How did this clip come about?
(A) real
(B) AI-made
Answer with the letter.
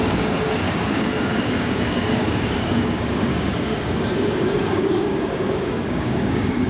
B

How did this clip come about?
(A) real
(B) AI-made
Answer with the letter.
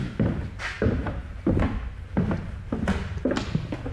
A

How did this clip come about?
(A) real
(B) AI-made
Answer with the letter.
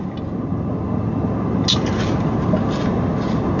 A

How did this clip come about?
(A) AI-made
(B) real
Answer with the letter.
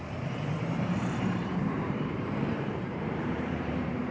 A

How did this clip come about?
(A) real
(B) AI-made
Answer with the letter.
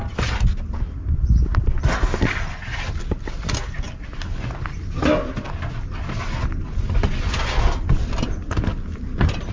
A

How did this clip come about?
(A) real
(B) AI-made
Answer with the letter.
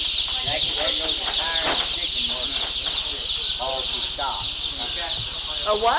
A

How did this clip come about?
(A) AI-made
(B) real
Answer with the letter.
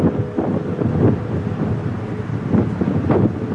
B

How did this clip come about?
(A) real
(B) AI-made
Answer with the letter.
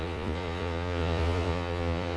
B